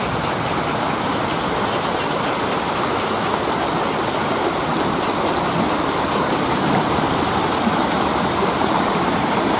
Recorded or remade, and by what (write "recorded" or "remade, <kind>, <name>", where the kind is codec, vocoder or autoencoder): recorded